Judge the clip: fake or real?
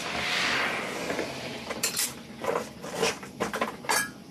fake